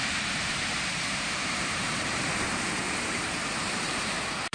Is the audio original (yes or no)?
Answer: no